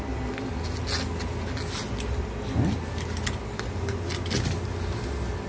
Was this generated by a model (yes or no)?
no